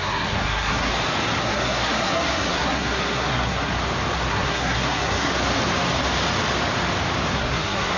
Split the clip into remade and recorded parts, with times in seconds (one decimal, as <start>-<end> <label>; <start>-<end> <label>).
0.0-0.9 remade; 0.9-1.4 recorded; 1.4-3.7 remade; 3.7-4.3 recorded; 4.3-5.3 remade; 5.3-7.3 recorded; 7.3-8.0 remade